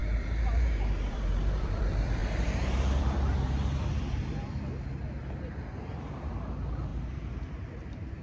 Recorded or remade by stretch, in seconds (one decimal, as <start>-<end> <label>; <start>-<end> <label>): 0.0-1.8 remade; 1.8-2.2 recorded; 2.2-4.7 remade; 4.7-6.9 recorded; 6.9-8.2 remade